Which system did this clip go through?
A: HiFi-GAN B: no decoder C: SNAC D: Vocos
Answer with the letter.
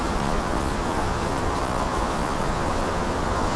D